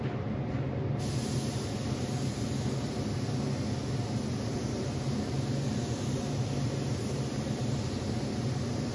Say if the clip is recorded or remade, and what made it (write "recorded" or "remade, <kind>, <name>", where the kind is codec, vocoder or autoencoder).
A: recorded